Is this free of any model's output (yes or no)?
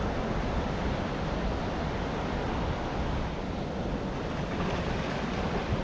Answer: yes